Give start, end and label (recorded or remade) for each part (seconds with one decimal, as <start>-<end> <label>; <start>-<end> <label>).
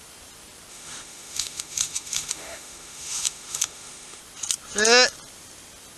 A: 0.0-0.7 recorded; 0.7-4.2 remade; 4.2-6.0 recorded